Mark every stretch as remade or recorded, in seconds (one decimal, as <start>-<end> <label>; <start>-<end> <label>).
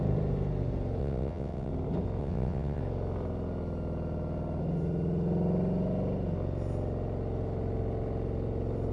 0.0-1.0 recorded; 1.0-1.7 remade; 1.7-2.2 recorded; 2.2-2.8 remade; 2.8-8.9 recorded